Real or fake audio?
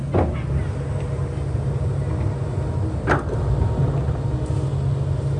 real